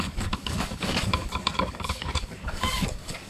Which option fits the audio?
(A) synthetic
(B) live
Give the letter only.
A